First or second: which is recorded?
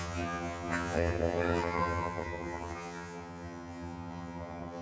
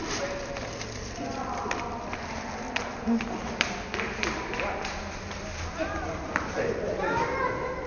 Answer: second